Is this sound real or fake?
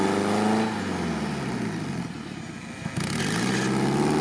real